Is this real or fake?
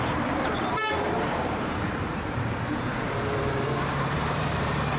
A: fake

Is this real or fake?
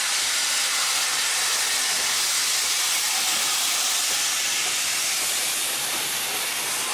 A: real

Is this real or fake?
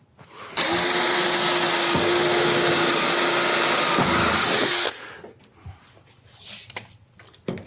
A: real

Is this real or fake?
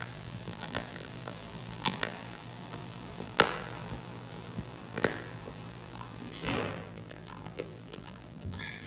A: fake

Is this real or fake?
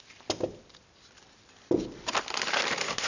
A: real